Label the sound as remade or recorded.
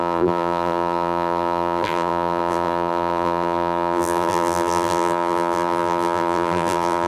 remade